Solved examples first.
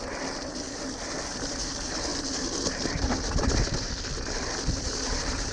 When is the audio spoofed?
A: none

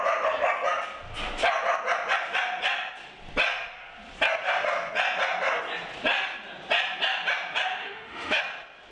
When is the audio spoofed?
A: 7.8-8.4 (autoencoder, DAC-VAE)

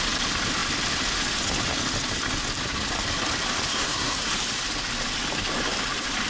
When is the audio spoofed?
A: 3.7-4.3 (codec, SNAC)

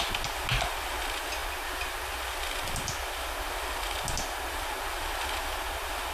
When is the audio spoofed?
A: none

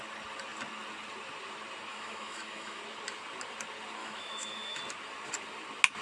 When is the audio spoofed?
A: 1.9-2.8 (autoencoder, DAC-VAE); 4.0-4.8

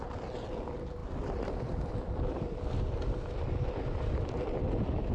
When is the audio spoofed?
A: none

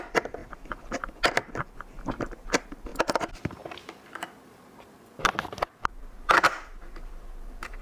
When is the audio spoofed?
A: 0.0-0.4 (vocoder, BigVGAN v2); 1.5-2.9; 5.9-7.8

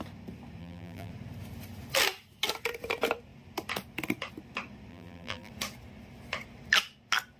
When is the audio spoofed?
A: 0.6-1.1 (vocoder, BigVGAN v2); 4.9-5.5